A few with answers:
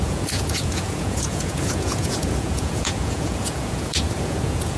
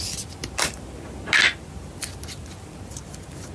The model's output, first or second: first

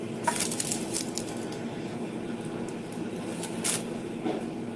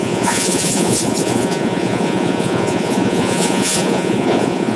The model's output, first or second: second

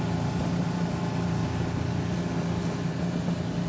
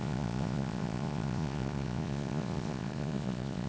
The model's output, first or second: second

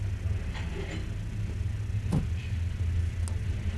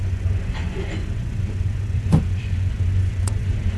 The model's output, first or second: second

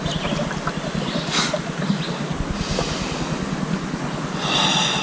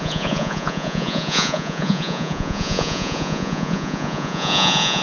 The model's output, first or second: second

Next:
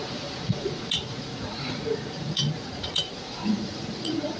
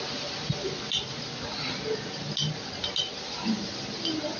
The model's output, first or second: first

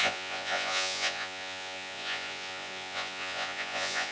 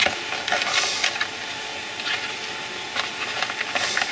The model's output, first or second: first